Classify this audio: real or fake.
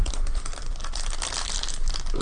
fake